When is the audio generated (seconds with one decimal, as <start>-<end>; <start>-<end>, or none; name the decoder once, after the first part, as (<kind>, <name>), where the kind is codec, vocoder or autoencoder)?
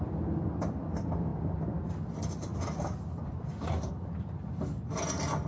none